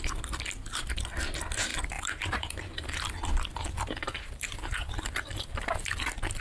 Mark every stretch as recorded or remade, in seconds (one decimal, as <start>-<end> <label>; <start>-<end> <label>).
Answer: 0.0-1.7 recorded; 1.7-3.1 remade; 3.1-4.0 recorded; 4.0-5.8 remade; 5.8-6.4 recorded